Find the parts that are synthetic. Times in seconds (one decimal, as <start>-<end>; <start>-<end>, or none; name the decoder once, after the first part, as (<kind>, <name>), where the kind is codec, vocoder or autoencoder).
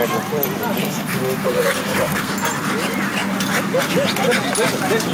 0.8-2.3 (codec, SNAC)